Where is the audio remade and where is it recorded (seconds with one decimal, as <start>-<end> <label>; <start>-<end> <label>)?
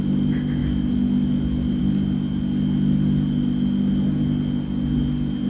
0.0-5.5 recorded